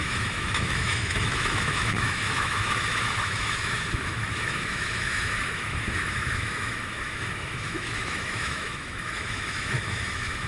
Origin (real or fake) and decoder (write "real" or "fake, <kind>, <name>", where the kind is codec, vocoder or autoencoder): fake, autoencoder, DAC-VAE